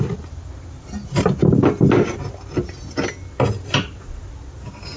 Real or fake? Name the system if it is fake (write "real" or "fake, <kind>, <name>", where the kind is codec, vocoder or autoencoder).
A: real